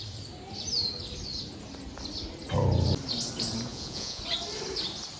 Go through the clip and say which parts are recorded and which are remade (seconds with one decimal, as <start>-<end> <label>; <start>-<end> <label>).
0.0-3.7 recorded; 3.7-4.2 remade; 4.2-5.2 recorded